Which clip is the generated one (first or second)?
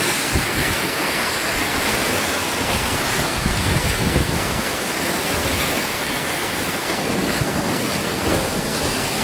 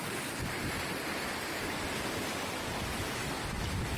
first